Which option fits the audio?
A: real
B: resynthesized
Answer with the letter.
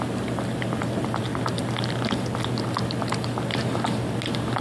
A